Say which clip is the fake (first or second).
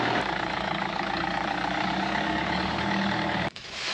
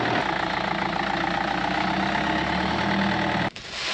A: first